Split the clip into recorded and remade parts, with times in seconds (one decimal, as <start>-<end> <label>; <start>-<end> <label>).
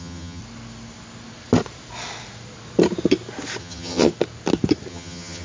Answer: 0.0-0.4 remade; 0.4-3.6 recorded; 3.6-4.1 remade; 4.1-4.9 recorded; 4.9-5.4 remade